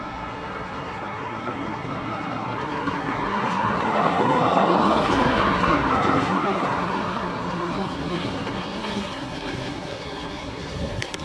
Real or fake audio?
fake